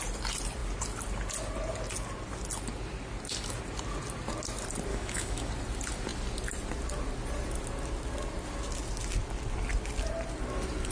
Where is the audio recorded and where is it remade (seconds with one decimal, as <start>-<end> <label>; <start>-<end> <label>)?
0.0-4.9 recorded; 4.9-5.5 remade; 5.5-10.9 recorded